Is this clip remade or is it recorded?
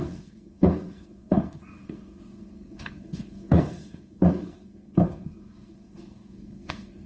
remade